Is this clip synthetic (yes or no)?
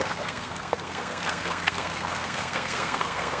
yes